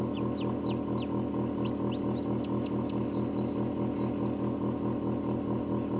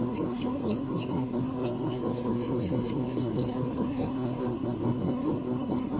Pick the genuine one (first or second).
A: first